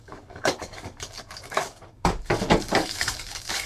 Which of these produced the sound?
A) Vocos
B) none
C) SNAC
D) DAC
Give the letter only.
D